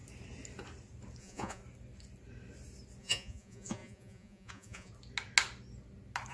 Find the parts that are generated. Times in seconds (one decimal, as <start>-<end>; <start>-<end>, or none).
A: 1.2-1.6; 3.0-4.9